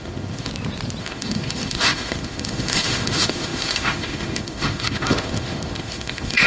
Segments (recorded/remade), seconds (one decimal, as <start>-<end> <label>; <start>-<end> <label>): 0.0-0.5 remade; 0.5-1.0 recorded; 1.0-6.5 remade